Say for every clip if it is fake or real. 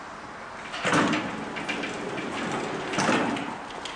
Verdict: real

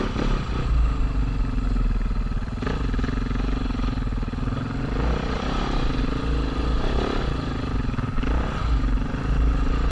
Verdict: real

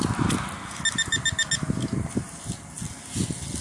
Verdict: real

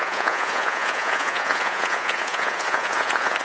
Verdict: fake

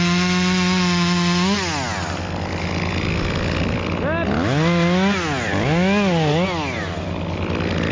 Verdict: real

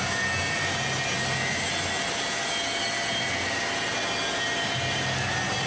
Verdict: real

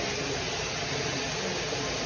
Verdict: real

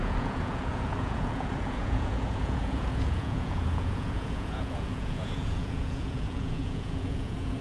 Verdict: fake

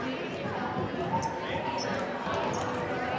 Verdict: real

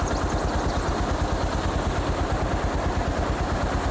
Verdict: real